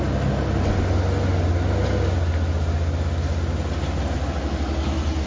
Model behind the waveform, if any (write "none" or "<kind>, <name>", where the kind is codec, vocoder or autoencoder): none